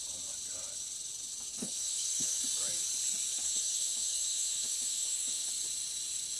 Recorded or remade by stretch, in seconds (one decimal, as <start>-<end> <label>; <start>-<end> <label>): 0.0-1.5 recorded; 1.5-2.4 remade; 2.4-3.3 recorded; 3.3-5.5 remade; 5.5-6.4 recorded